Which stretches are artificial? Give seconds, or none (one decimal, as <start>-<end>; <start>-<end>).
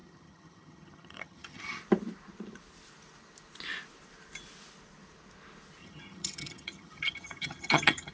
0.0-1.8; 5.8-8.1